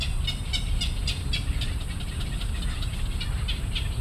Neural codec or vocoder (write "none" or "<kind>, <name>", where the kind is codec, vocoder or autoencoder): none